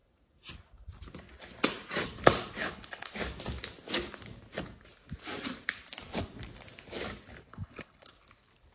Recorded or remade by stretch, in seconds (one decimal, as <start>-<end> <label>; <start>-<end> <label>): 0.0-2.6 recorded; 2.6-3.1 remade; 3.1-7.5 recorded; 7.5-8.1 remade; 8.1-8.7 recorded